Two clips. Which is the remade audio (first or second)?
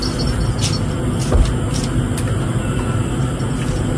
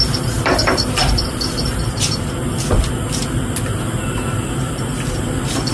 second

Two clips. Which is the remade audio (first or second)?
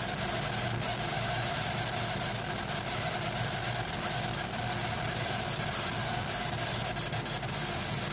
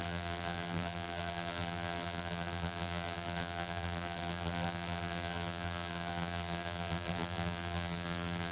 second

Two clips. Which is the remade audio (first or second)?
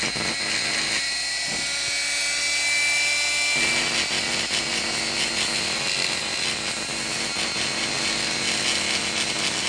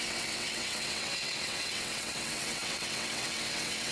second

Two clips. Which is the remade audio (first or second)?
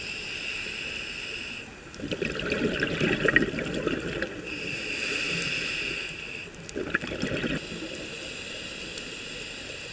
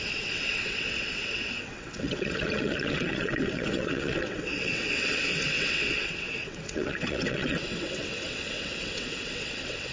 second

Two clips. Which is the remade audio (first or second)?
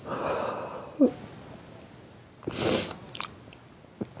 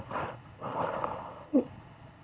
second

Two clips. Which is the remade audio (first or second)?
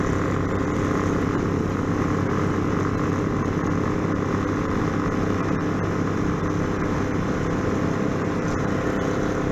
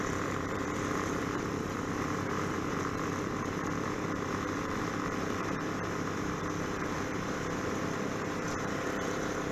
second